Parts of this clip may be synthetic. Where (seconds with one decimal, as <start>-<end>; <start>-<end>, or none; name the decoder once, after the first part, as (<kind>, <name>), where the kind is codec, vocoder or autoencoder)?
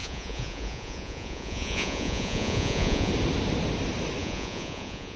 0.0-3.1 (vocoder, Vocos); 4.2-5.2